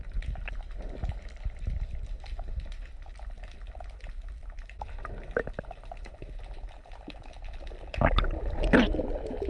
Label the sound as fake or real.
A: real